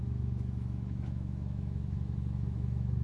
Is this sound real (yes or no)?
no